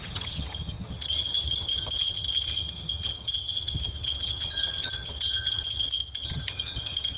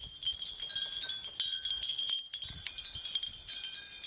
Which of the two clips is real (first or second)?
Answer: second